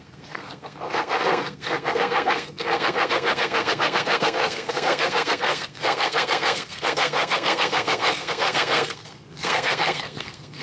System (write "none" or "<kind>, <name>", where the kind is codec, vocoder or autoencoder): codec, SNAC